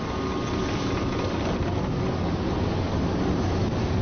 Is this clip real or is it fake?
real